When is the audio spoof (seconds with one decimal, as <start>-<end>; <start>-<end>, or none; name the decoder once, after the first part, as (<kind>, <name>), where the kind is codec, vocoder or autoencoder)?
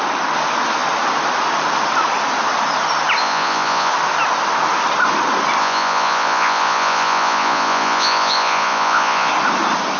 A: 3.2-3.9 (vocoder, Vocos); 5.6-9.3